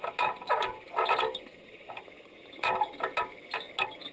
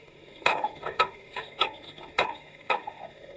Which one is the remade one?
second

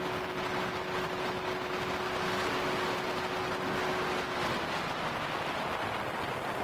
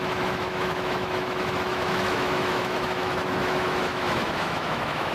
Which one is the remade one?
second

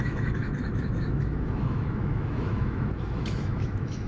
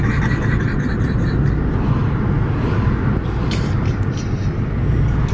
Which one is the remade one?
first